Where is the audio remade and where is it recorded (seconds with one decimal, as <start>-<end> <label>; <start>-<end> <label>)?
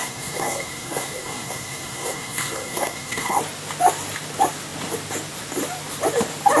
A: 0.0-3.4 remade; 3.4-6.6 recorded